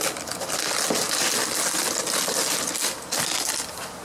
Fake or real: real